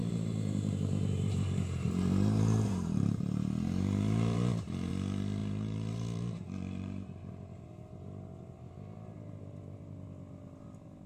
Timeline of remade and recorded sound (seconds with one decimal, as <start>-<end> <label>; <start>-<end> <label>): 0.0-4.9 remade; 4.9-5.4 recorded; 5.4-7.3 remade; 7.3-11.1 recorded